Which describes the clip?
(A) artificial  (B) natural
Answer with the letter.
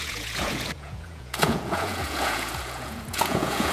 A